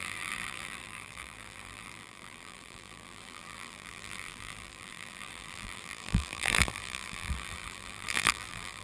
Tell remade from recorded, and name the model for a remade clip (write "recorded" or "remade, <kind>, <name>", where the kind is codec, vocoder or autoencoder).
remade, vocoder, BigVGAN v2